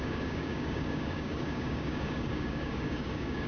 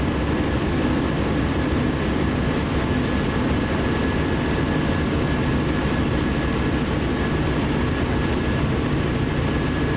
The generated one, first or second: first